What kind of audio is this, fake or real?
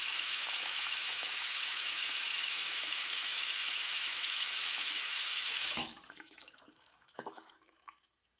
fake